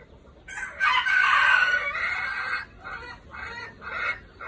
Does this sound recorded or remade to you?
recorded